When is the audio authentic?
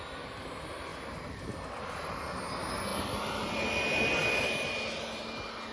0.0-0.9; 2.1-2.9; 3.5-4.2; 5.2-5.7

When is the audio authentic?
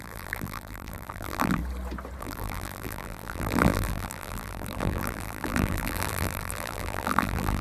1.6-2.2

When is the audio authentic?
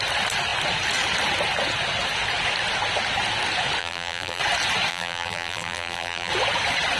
0.0-3.8; 4.4-4.9; 6.3-7.0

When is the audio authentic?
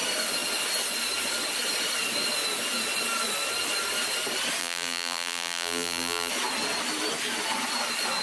0.0-4.6; 6.3-8.2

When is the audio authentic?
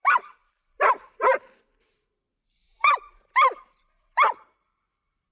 none